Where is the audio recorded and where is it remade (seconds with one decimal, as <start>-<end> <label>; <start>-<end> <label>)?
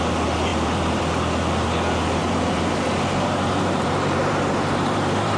0.0-0.5 recorded; 0.5-1.0 remade; 1.0-2.2 recorded; 2.2-5.4 remade